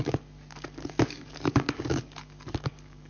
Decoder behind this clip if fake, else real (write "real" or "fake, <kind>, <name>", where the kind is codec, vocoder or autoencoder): fake, codec, DAC